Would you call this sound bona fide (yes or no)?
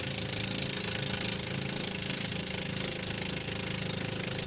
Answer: yes